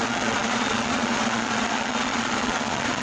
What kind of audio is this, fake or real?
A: fake